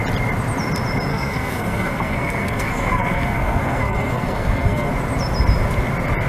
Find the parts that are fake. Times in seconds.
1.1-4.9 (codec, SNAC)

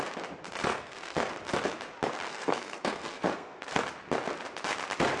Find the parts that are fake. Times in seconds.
0.7-1.3 (codec, SNAC); 2.3-3.8

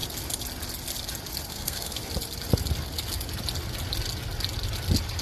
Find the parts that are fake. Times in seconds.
1.5-2.0 (codec, SNAC)